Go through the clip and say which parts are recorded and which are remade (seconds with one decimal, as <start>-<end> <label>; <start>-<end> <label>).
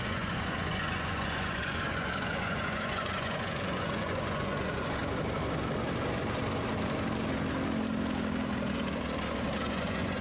0.0-5.0 remade; 5.0-9.7 recorded; 9.7-10.2 remade